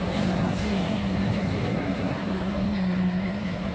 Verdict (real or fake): fake